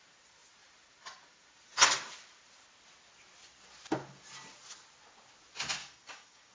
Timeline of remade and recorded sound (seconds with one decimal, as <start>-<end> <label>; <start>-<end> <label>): 0.0-5.8 recorded; 5.8-6.5 remade